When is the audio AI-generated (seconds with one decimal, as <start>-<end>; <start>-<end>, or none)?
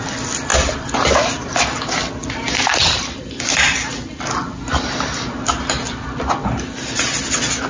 none